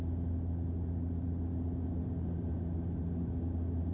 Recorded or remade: recorded